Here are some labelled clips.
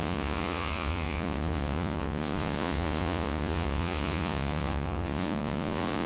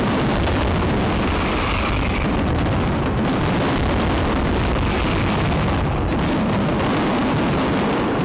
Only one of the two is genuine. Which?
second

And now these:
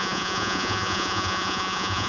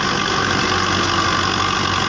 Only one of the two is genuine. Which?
second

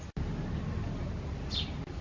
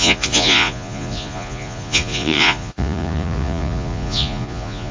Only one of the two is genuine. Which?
first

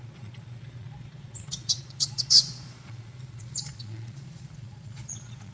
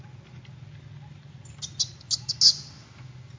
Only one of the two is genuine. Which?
second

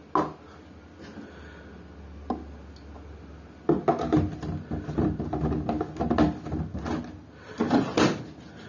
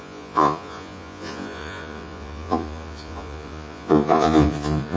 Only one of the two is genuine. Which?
first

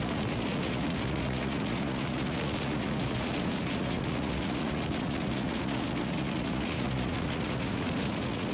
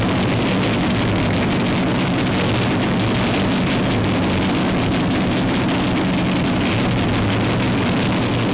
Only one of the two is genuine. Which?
second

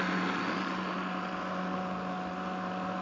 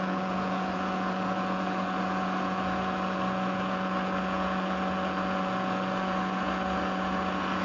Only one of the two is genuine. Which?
first